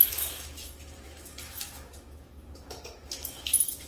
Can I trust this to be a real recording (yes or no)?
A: no